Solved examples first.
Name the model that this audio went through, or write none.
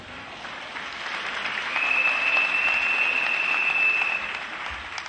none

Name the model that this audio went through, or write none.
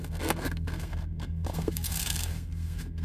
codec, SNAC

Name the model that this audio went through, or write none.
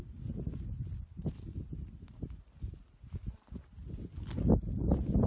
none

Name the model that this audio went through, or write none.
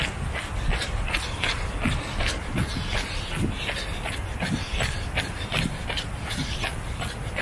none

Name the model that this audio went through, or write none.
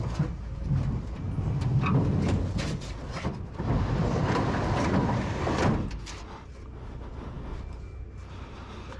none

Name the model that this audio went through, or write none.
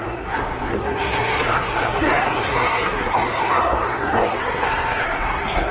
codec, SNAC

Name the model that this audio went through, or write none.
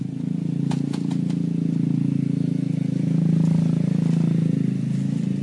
none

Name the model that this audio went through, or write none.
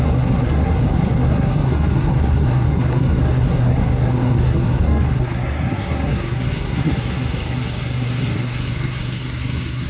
codec, SNAC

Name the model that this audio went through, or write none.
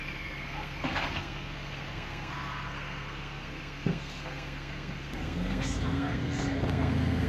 codec, SNAC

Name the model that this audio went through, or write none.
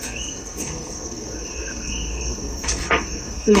codec, SNAC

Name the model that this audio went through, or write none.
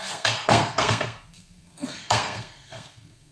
codec, SNAC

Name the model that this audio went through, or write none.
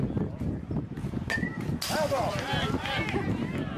none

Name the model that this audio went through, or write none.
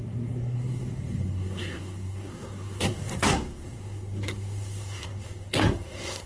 codec, SNAC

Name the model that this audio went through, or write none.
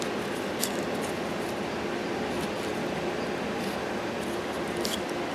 none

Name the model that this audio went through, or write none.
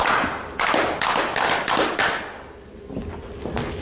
none